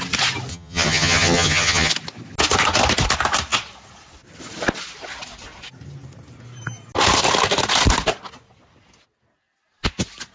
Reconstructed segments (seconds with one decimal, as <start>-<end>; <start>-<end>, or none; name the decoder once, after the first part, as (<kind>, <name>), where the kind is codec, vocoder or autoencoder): 0.5-1.9 (vocoder, HiFi-GAN)